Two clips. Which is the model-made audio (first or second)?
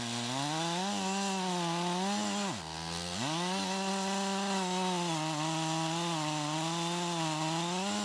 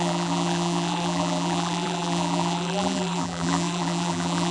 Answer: second